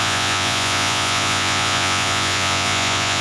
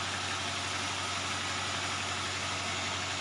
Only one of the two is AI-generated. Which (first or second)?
first